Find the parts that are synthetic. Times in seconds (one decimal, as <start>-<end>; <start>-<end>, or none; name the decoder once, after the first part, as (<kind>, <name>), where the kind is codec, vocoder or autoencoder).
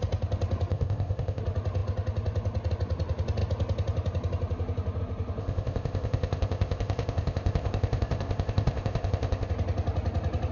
0.7-1.4 (codec, ZipCodec); 5.4-9.5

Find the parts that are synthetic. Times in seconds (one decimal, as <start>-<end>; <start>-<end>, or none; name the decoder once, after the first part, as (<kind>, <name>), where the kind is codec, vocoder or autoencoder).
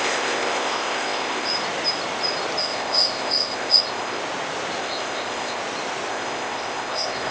0.0-1.5 (codec, ZipCodec); 2.6-4.2; 4.8-5.6; 6.1-7.3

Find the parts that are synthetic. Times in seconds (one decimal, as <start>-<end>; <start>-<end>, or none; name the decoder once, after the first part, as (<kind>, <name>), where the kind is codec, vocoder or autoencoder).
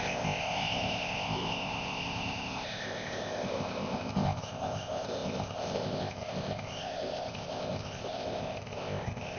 0.0-9.4 (codec, ZipCodec)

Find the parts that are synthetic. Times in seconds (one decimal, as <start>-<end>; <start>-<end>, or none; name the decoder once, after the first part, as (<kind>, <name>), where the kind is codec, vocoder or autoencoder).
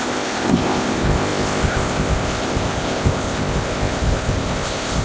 0.0-5.0 (codec, ZipCodec)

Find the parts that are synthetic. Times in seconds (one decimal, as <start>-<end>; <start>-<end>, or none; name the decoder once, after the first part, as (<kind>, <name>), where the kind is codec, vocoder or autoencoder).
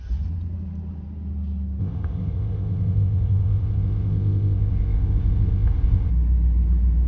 1.8-6.1 (codec, ZipCodec)